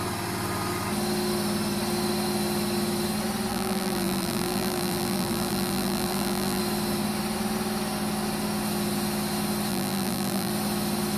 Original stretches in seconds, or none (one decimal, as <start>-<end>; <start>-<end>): 0.0-3.5; 6.6-9.7; 10.5-11.2